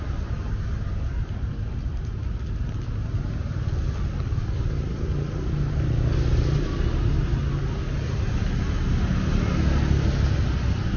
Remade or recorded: recorded